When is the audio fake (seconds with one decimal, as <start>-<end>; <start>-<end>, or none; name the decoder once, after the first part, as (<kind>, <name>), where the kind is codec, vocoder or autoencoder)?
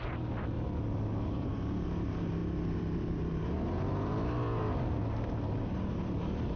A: none